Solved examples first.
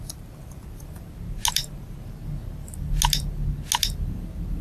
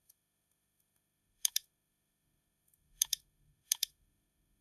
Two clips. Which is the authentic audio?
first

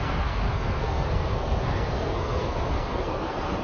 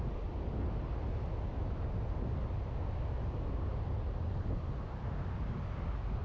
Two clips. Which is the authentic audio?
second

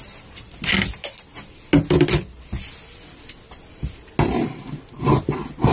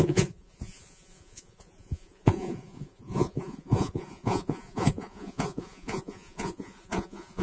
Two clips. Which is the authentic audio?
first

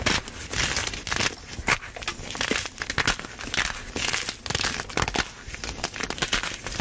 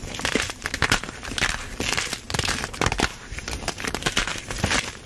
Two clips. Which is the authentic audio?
first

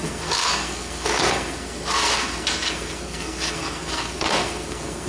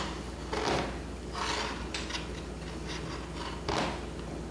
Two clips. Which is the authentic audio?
second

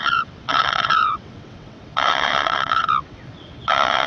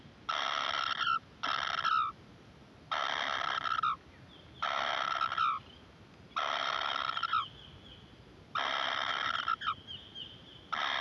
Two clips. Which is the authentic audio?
second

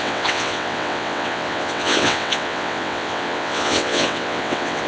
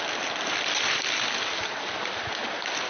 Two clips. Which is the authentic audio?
second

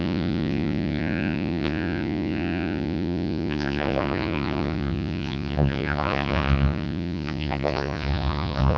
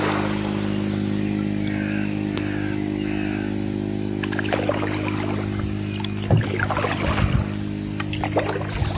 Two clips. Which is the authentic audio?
second